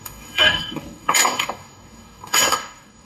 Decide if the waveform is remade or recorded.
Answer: remade